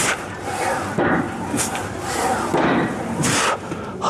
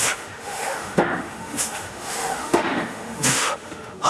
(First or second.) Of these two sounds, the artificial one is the second